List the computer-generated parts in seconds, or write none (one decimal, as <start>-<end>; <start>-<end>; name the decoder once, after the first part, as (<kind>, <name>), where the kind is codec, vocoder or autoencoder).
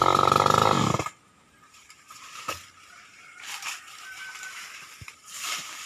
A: 0.8-5.9 (vocoder, BigVGAN v2)